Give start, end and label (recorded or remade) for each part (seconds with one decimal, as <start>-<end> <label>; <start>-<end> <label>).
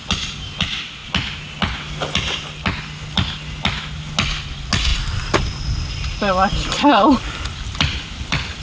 0.0-4.9 recorded; 4.9-8.6 remade